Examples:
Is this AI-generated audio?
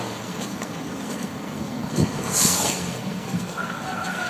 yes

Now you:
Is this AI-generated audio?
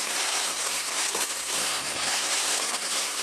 yes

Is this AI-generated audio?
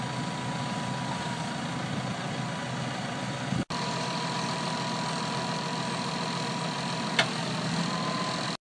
no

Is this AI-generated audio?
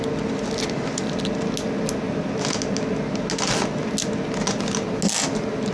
no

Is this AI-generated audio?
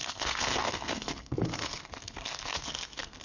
yes